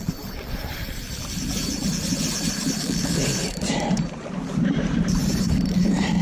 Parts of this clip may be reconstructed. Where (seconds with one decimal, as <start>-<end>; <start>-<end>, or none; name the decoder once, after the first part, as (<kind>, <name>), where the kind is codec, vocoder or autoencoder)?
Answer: 0.0-6.2 (vocoder, BigVGAN v2)